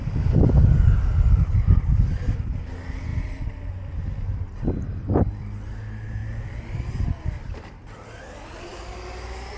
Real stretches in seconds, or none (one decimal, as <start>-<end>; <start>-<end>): 0.0-9.6